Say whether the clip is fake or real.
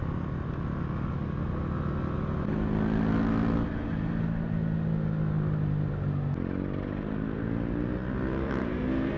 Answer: real